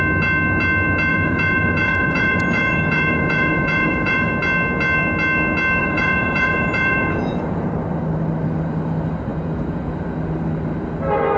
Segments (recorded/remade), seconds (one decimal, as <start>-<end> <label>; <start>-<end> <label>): 0.0-1.1 recorded; 1.1-4.3 remade; 4.3-5.8 recorded; 5.8-7.7 remade; 7.7-9.3 recorded; 9.3-9.9 remade; 9.9-11.4 recorded